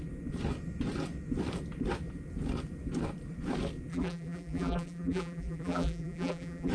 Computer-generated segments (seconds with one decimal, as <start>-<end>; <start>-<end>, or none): 3.9-6.7